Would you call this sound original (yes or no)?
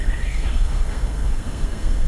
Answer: no